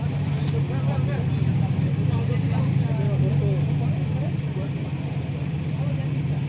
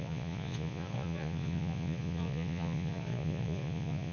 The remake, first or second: second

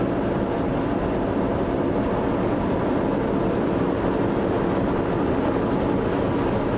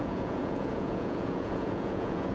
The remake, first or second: second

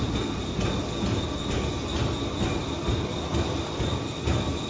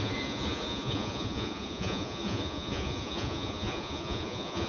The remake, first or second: second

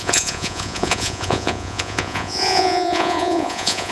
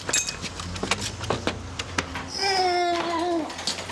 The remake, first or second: first